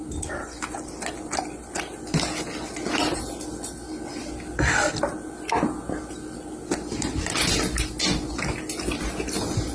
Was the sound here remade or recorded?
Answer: recorded